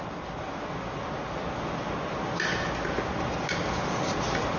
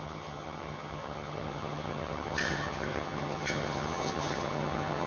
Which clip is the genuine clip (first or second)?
first